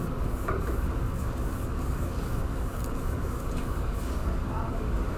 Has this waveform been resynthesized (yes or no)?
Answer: yes